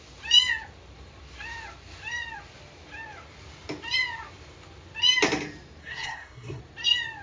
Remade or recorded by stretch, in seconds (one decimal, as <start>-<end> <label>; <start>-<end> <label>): 0.0-5.8 recorded; 5.8-6.6 remade; 6.6-7.2 recorded